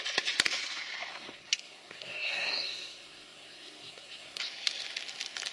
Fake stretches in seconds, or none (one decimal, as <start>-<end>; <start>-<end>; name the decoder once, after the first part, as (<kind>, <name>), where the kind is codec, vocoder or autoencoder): 1.1-4.4 (codec, SNAC)

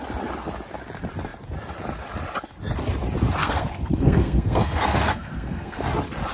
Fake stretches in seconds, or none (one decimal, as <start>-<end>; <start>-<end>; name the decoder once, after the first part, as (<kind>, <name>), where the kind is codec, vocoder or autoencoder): 3.4-5.8 (codec, SNAC)